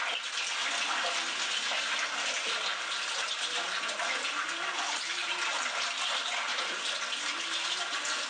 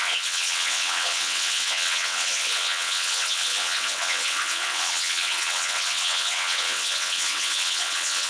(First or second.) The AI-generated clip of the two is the second